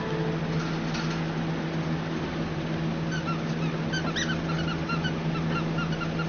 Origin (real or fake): real